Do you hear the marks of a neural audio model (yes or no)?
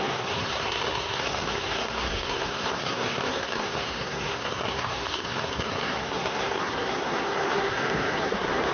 yes